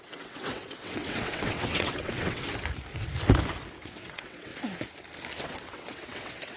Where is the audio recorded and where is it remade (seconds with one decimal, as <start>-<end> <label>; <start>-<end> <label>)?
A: 0.0-2.5 remade; 2.5-3.8 recorded; 3.8-4.5 remade; 4.5-5.4 recorded; 5.4-6.6 remade